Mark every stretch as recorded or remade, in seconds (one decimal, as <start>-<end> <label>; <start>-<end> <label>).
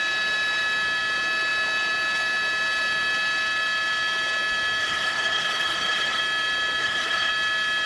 0.0-4.8 recorded; 4.8-6.2 remade; 6.2-6.8 recorded; 6.8-7.3 remade; 7.3-7.9 recorded